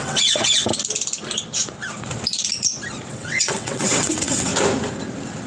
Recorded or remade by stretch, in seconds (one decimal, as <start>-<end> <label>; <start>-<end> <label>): 0.0-0.7 remade; 0.7-3.1 recorded; 3.1-4.5 remade; 4.5-5.5 recorded